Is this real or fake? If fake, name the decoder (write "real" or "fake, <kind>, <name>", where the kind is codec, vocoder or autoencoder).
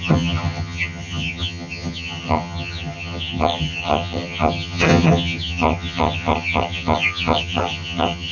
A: fake, vocoder, HiFi-GAN